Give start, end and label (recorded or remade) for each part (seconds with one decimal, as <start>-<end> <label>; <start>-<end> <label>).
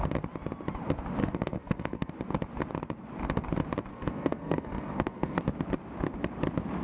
0.0-1.2 recorded; 1.2-2.1 remade; 2.1-3.9 recorded; 3.9-5.4 remade; 5.4-6.8 recorded